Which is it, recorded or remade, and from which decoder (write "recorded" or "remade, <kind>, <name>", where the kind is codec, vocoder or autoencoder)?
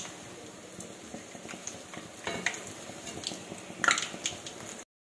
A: recorded